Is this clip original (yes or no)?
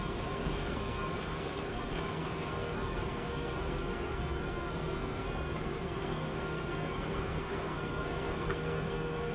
no